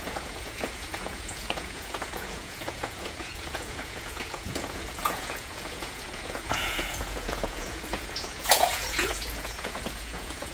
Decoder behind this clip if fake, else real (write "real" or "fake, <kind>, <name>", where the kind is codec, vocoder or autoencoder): fake, vocoder, Vocos